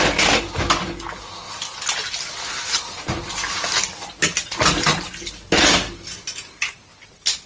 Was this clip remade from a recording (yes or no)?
no